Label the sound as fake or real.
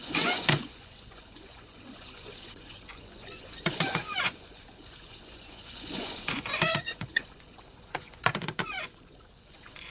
fake